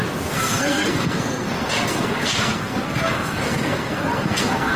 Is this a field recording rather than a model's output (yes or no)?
no